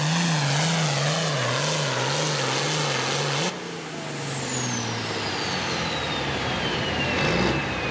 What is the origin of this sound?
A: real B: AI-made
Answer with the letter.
A